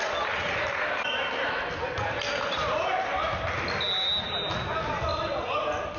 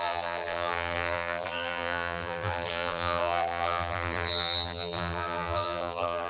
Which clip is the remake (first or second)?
second